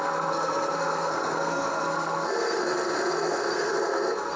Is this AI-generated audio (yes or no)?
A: yes